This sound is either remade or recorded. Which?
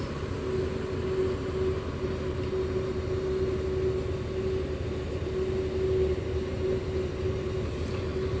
recorded